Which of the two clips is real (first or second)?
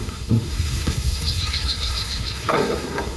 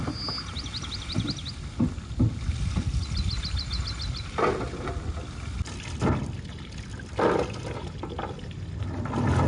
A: second